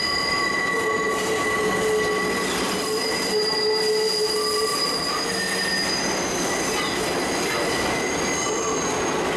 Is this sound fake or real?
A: real